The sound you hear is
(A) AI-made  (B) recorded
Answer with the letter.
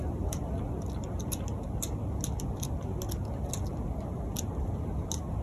B